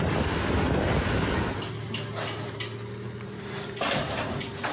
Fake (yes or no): no